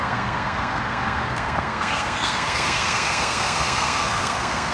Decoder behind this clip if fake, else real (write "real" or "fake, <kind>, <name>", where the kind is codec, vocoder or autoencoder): fake, codec, SNAC